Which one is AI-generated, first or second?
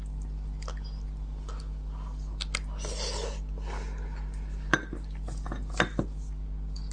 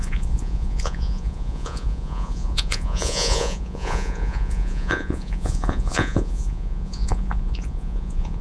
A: second